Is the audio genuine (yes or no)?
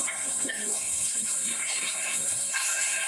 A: no